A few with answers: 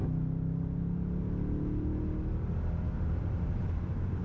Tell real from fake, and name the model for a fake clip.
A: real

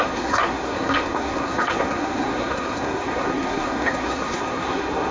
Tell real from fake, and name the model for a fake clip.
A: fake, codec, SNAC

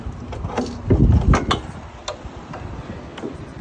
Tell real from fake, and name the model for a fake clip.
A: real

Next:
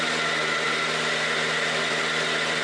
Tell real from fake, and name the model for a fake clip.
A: real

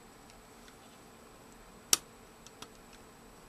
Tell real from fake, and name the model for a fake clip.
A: real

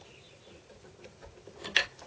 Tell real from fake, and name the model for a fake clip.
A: real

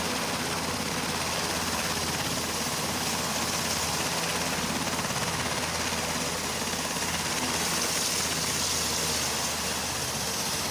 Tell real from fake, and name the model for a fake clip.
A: real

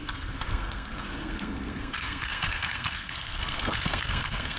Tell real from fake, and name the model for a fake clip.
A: fake, codec, SNAC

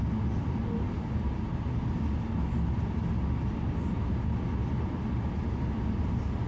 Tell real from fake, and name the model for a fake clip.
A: real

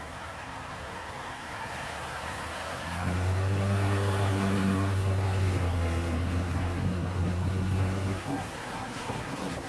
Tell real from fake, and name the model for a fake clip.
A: fake, codec, SNAC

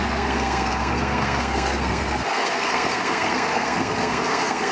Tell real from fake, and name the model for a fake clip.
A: fake, codec, SNAC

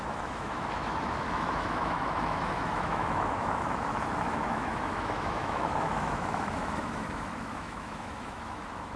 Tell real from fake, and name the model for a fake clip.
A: fake, autoencoder, DAC-VAE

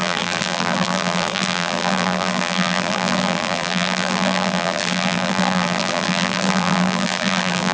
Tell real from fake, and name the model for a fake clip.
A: fake, vocoder, BigVGAN v2